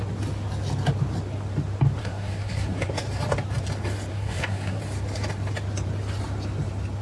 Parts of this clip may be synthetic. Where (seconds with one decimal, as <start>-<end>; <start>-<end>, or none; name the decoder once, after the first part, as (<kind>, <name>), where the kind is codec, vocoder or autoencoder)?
2.0-2.9 (codec, SNAC); 4.1-4.8

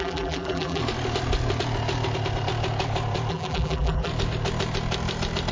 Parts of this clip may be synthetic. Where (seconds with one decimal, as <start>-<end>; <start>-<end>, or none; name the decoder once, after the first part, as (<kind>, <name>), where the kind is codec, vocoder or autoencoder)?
0.0-0.8 (vocoder, BigVGAN v2); 3.3-4.1

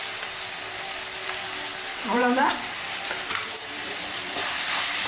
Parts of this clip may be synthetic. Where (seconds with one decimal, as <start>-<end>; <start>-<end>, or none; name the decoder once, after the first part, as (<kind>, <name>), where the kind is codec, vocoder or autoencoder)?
1.9-5.1 (vocoder, BigVGAN v2)

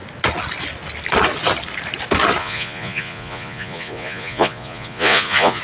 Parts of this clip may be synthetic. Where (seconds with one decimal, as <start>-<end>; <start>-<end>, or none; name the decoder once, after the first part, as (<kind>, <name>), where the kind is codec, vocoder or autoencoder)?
2.4-5.6 (vocoder, Vocos)